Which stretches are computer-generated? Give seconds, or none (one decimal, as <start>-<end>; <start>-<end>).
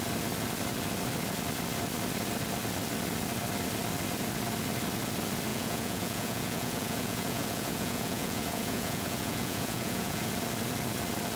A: 5.5-10.3